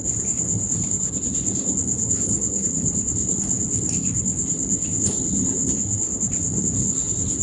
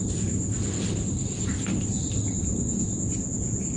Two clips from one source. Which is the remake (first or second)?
first